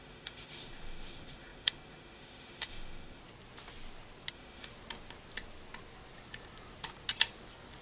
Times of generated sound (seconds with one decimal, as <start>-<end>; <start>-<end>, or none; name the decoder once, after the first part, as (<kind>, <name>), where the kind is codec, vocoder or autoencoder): 0.0-3.2 (autoencoder, DAC-VAE); 4.3-4.7